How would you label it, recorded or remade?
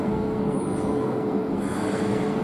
remade